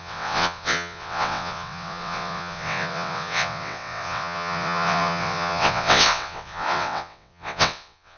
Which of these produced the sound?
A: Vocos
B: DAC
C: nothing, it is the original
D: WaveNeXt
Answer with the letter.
D